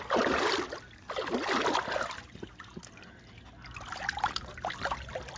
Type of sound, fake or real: real